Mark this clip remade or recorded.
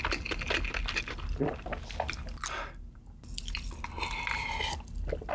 recorded